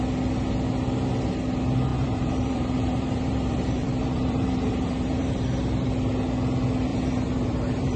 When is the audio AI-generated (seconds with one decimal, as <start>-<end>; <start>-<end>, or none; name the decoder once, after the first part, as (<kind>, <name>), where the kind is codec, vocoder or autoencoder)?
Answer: 1.9-5.3 (vocoder, BigVGAN v2); 6.9-8.0